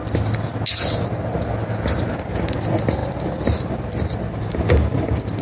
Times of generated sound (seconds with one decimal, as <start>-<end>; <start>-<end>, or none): none

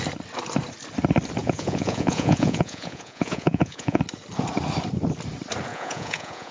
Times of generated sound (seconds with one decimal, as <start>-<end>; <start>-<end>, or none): 1.4-4.0; 5.7-6.5

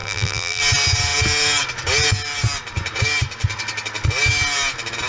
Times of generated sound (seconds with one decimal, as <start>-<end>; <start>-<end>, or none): 0.0-0.6